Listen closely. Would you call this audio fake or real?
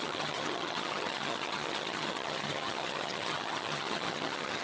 fake